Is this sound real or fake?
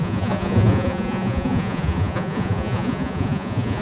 fake